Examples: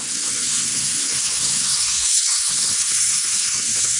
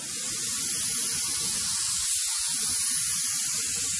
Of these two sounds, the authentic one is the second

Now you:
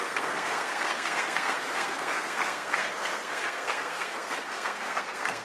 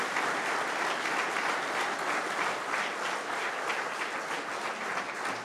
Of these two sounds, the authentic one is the second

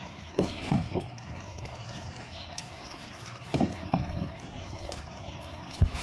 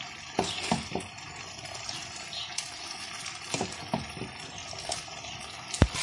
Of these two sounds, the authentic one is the second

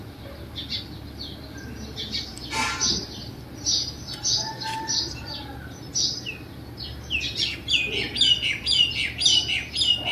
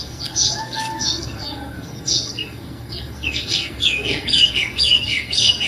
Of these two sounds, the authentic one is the first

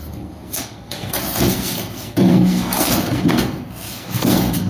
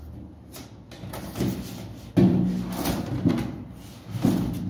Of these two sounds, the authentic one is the second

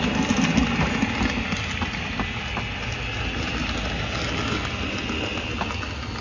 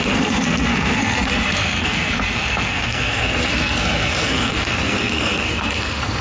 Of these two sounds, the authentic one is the first